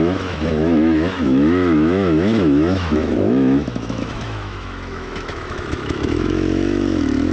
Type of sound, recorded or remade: remade